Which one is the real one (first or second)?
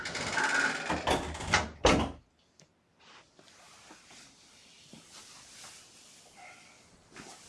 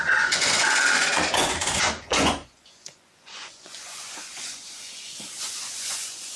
first